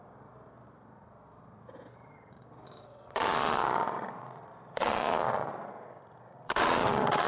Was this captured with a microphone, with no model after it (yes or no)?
no